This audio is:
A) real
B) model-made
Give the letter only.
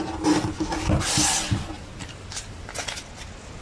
A